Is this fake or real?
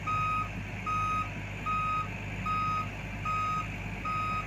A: real